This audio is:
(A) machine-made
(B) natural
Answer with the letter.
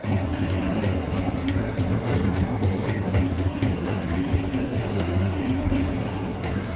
A